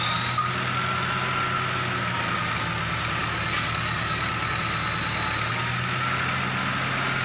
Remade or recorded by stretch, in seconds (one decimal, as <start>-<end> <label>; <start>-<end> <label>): 0.0-3.2 recorded; 3.2-4.6 remade; 4.6-7.2 recorded